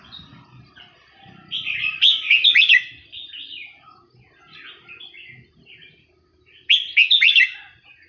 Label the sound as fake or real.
real